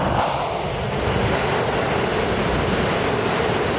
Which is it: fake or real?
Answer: real